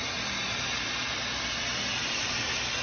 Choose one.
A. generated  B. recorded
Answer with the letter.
A